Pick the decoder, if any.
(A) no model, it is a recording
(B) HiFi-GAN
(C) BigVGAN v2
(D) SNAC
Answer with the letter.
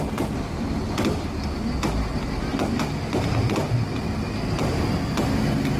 A